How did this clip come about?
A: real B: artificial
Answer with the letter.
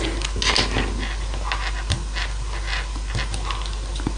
A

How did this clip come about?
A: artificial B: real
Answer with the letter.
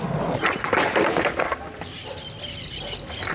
B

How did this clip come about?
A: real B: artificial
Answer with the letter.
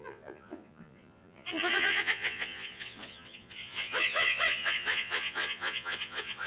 B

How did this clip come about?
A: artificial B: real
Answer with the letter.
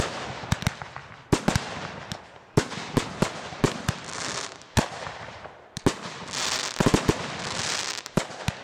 B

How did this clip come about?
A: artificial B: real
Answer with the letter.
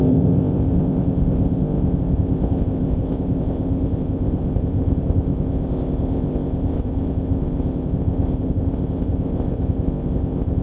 A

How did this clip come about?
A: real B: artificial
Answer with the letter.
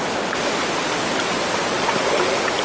A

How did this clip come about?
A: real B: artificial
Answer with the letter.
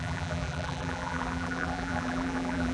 B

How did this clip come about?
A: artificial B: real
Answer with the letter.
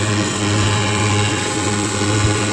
A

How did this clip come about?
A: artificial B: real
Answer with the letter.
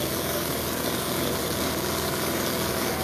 A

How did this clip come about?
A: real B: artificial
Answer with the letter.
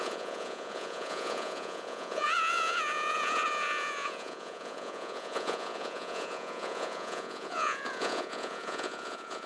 B